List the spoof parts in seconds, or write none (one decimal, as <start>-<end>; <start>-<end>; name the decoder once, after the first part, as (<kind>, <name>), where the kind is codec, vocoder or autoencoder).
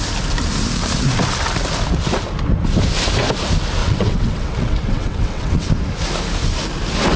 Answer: 3.8-5.7 (vocoder, WaveNeXt)